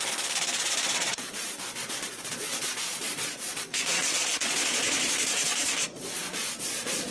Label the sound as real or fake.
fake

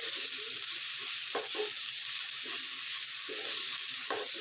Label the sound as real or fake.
real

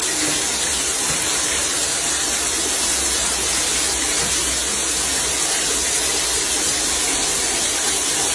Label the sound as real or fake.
real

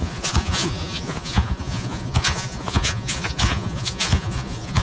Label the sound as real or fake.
fake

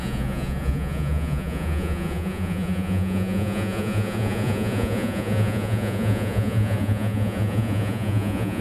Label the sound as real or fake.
fake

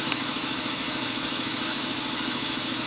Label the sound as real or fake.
fake